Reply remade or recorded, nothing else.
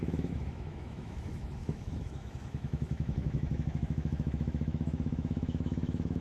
remade